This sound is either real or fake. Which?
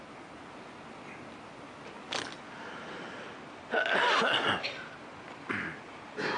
real